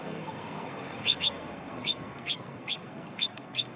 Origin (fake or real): fake